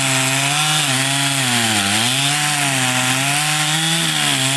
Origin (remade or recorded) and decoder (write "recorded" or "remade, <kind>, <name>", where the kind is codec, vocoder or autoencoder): recorded